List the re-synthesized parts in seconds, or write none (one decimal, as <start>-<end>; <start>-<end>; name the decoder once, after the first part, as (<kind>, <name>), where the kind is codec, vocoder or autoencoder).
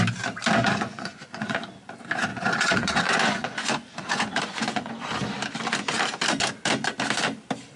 0.6-1.6 (vocoder, Vocos); 2.3-4.9